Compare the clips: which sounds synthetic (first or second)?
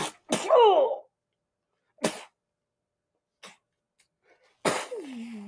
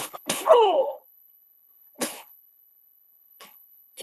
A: second